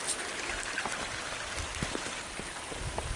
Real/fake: real